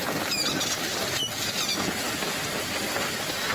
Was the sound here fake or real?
real